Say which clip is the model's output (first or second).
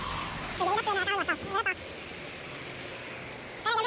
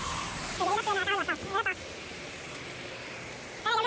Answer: second